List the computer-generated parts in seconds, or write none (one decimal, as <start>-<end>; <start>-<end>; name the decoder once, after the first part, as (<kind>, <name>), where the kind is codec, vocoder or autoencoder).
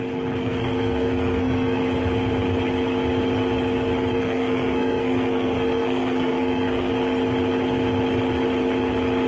0.4-1.8 (codec, SNAC); 4.1-6.9